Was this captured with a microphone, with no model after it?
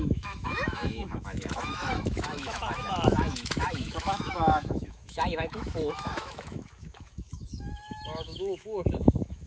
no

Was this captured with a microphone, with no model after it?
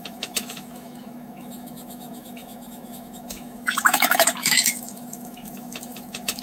no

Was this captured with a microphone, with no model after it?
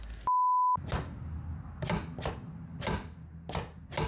yes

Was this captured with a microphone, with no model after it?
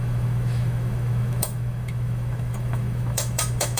no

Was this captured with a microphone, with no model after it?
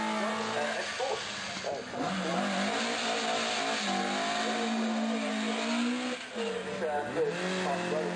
yes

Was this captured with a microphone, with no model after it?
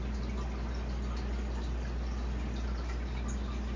yes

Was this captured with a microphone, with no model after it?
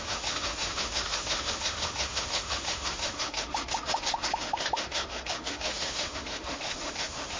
no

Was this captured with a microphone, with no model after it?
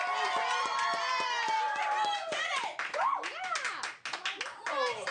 yes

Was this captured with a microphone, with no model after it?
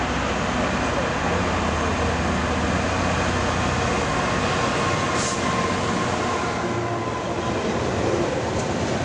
yes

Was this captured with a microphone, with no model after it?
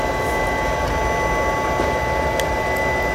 yes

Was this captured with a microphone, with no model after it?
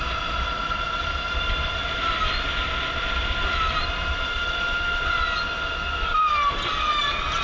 yes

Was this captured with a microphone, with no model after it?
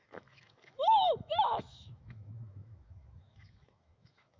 no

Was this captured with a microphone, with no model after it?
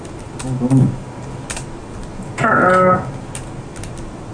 yes